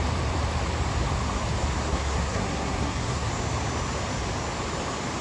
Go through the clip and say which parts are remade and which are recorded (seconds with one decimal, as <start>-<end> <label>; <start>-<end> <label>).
0.0-1.9 recorded; 1.9-3.3 remade; 3.3-5.2 recorded